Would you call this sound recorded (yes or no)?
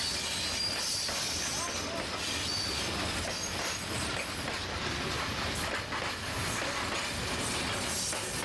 yes